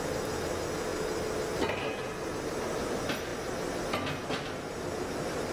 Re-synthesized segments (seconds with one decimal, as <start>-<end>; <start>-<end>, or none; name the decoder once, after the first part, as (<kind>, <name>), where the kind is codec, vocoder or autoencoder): none

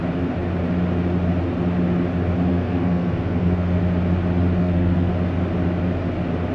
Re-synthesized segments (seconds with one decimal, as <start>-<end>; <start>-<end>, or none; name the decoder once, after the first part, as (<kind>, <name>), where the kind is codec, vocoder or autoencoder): 2.5-3.8 (codec, SNAC); 4.6-5.1

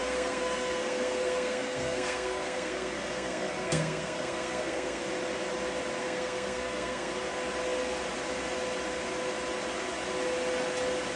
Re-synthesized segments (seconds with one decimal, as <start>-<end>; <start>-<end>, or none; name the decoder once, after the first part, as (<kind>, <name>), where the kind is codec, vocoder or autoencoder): 0.0-5.0 (codec, SNAC); 6.0-7.1